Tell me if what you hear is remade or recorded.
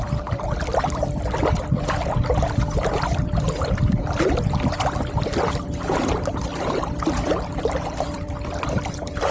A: remade